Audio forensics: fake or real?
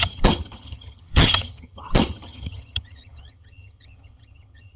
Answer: fake